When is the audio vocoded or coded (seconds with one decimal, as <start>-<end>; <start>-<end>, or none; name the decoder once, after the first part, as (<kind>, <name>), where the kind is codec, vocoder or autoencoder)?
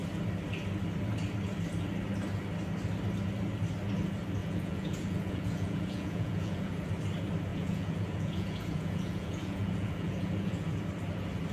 4.4-6.9 (vocoder, Vocos); 7.5-10.8